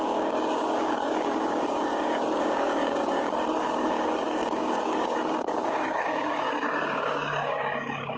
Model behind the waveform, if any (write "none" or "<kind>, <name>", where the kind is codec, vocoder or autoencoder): codec, DAC